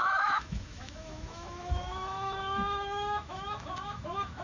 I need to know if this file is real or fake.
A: fake